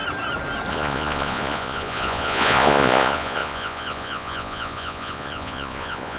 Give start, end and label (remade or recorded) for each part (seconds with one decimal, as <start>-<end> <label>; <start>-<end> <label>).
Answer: 0.0-0.7 recorded; 0.7-6.2 remade